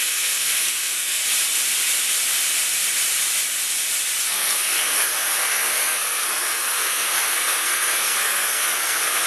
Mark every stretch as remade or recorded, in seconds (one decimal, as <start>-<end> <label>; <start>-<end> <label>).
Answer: 0.0-1.2 remade; 1.2-4.2 recorded; 4.2-9.3 remade